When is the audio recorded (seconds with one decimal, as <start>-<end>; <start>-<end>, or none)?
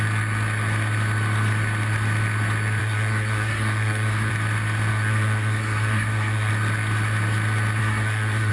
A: 0.0-2.8; 4.3-4.9; 6.5-7.8